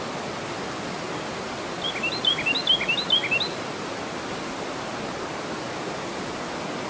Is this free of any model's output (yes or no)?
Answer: yes